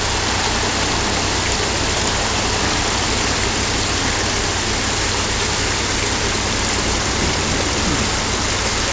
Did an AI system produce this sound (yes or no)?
no